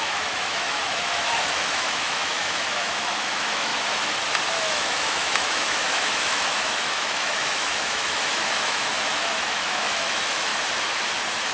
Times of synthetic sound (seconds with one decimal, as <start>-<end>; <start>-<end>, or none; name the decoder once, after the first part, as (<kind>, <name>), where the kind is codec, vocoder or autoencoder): 0.0-3.7 (autoencoder, DAC-VAE); 4.5-10.5